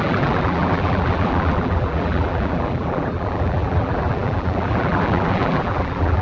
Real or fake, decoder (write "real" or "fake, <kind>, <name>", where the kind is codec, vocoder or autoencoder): fake, vocoder, BigVGAN v2